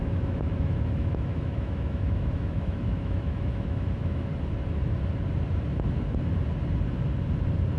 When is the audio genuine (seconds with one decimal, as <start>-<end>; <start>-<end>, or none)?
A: 4.3-7.8